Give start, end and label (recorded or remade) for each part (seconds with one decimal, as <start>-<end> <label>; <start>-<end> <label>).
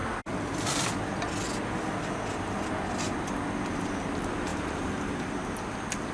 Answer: 0.0-3.7 recorded; 3.7-6.1 remade